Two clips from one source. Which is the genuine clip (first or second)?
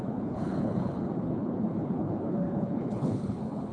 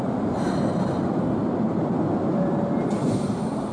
second